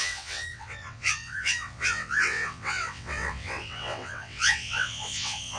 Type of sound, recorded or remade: remade